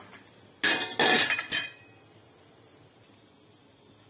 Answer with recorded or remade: recorded